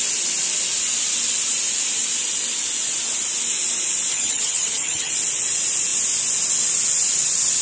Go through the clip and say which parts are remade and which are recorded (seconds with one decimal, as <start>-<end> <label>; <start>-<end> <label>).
0.0-4.1 recorded; 4.1-5.1 remade; 5.1-7.6 recorded